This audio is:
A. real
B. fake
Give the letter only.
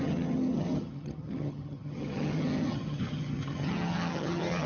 B